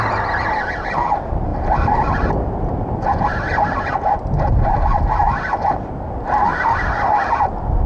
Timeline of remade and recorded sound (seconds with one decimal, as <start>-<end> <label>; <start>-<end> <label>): 0.0-7.9 recorded